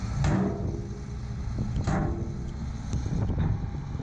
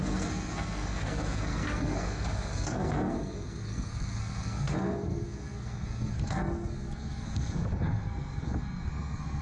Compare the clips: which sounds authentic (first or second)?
first